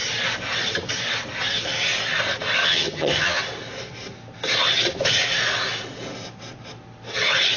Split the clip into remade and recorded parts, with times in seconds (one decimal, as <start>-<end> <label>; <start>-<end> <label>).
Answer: 0.0-2.6 recorded; 2.6-3.4 remade; 3.4-7.6 recorded